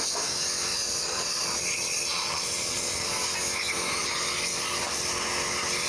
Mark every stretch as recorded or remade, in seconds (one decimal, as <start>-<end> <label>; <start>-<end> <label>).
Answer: 0.0-0.7 recorded; 0.7-3.1 remade; 3.1-5.9 recorded